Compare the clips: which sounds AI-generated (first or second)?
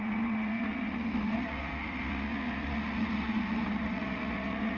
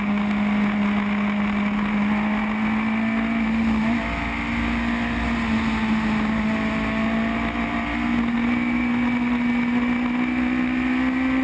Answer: first